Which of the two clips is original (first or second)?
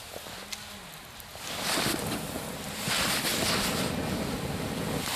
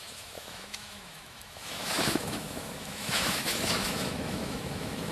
first